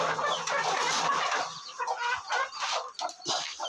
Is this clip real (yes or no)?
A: yes